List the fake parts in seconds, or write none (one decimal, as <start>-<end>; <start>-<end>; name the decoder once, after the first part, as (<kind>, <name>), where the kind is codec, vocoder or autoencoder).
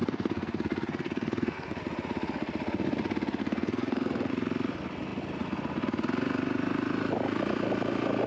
0.0-1.8 (codec, SNAC); 3.4-4.3